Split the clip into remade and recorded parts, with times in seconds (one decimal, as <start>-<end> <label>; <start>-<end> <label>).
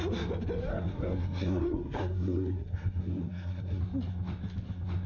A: 0.0-0.7 recorded; 0.7-3.8 remade; 3.8-5.1 recorded